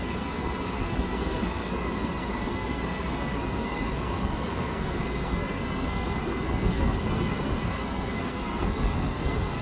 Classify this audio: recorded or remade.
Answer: remade